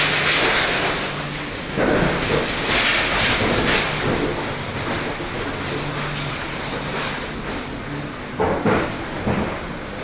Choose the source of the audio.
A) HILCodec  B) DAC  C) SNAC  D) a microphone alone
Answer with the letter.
D